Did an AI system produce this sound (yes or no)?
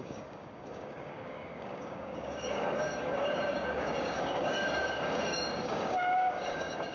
yes